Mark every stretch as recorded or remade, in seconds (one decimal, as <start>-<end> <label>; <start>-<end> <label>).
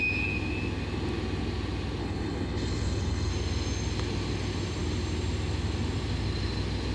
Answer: 0.0-2.0 recorded; 2.0-3.3 remade; 3.3-6.9 recorded